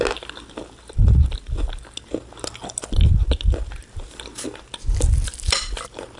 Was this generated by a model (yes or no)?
no